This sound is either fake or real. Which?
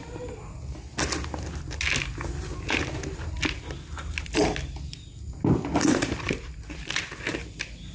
real